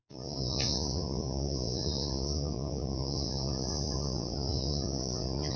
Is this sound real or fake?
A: fake